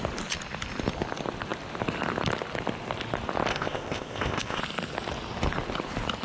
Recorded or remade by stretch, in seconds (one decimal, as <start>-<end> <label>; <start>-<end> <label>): 0.0-3.5 recorded; 3.5-4.6 remade; 4.6-6.2 recorded